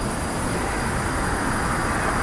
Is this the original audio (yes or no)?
yes